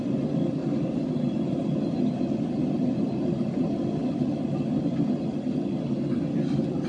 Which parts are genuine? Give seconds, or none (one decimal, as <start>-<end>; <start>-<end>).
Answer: 0.0-0.6; 1.7-2.6; 4.5-6.9